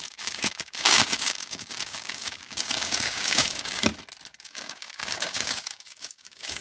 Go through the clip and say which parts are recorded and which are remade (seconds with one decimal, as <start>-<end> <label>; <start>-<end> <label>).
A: 0.0-3.9 remade; 3.9-4.4 recorded; 4.4-6.6 remade